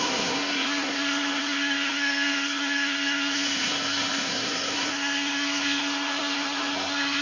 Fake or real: fake